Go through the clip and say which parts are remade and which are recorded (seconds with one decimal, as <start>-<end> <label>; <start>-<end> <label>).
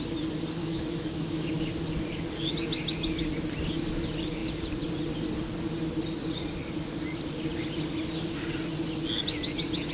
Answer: 0.0-0.6 recorded; 0.6-1.6 remade; 1.6-9.9 recorded